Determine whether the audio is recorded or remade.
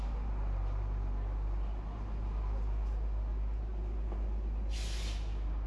recorded